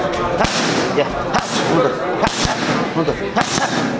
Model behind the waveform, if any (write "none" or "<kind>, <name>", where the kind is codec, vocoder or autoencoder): none